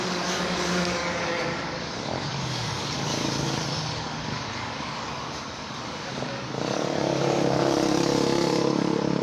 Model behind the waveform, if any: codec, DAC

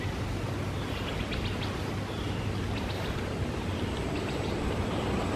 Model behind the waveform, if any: none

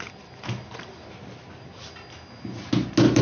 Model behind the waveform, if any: none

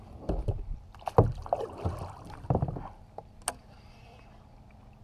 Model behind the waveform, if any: none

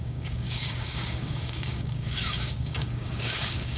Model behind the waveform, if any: codec, DAC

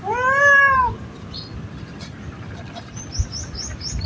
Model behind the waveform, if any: none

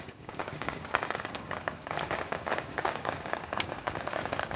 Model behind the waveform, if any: codec, DAC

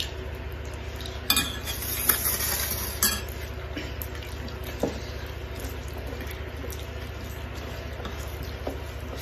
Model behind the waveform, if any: none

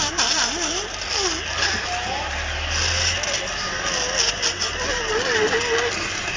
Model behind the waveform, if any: none